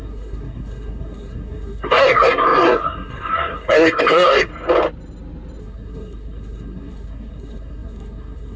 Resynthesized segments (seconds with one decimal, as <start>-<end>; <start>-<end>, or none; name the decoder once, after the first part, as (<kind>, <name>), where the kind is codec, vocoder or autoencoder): 0.0-4.5 (codec, SNAC); 5.6-8.6